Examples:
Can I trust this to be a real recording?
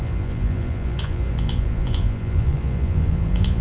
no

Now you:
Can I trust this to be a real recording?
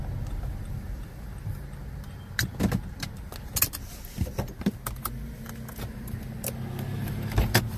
yes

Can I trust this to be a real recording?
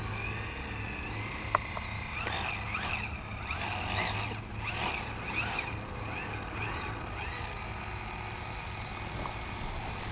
yes